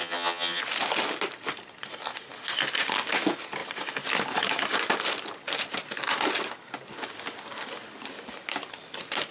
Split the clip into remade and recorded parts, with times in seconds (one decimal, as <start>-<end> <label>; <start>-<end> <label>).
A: 0.0-0.6 remade; 0.6-9.3 recorded